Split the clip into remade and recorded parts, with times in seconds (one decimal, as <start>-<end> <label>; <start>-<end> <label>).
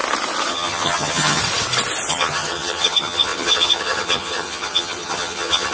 0.0-0.5 recorded; 0.5-1.4 remade; 1.4-2.1 recorded; 2.1-5.7 remade